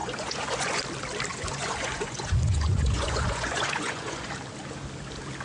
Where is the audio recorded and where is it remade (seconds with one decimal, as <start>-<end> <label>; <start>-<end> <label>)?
0.0-0.8 remade; 0.8-1.3 recorded; 1.3-4.3 remade; 4.3-5.4 recorded